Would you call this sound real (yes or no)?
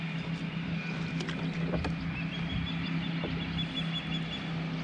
yes